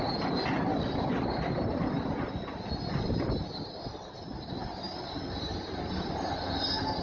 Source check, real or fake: real